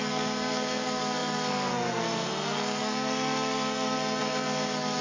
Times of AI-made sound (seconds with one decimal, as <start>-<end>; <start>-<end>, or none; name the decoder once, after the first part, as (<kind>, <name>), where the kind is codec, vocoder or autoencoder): 0.0-5.0 (codec, SNAC)